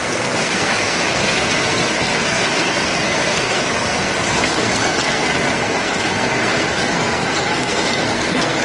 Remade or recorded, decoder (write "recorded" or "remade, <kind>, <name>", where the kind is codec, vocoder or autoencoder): remade, codec, SNAC